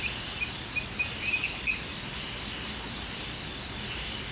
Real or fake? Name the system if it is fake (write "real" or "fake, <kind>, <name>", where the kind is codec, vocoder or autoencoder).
real